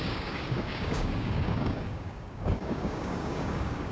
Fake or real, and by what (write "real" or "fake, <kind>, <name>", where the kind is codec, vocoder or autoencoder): fake, codec, DAC